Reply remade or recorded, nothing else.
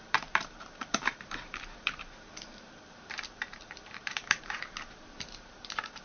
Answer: remade